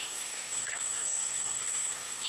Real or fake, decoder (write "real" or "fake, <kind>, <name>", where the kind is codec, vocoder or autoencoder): fake, codec, SNAC